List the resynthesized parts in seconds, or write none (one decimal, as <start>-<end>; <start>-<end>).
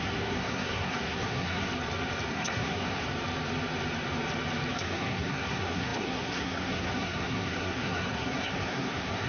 0.0-1.7; 2.3-3.1; 4.7-9.3